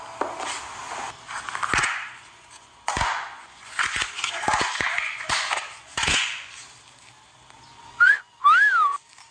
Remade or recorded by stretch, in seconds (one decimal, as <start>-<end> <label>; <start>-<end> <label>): 0.0-1.8 recorded; 1.8-6.5 remade; 6.5-7.7 recorded; 7.7-8.4 remade; 8.4-9.3 recorded